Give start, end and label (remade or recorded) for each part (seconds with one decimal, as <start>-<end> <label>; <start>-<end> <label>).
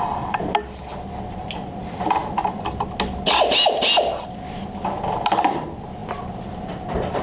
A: 0.0-7.2 recorded